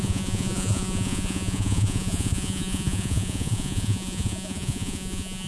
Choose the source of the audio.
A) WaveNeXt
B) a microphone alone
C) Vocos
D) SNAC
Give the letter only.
C